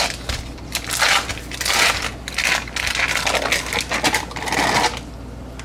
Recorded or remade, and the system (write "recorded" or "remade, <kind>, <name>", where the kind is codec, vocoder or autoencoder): recorded